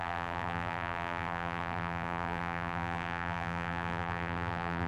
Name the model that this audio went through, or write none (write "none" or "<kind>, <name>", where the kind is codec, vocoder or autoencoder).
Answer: vocoder, BigVGAN v2